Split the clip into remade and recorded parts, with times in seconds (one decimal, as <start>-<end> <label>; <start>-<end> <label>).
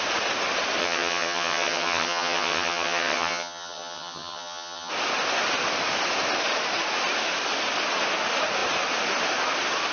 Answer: 0.0-0.8 recorded; 0.8-4.9 remade; 4.9-9.9 recorded